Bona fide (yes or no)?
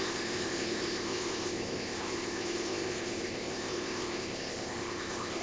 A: no